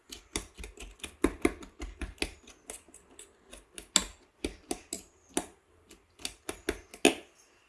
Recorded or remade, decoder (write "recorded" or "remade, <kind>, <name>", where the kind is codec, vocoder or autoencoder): recorded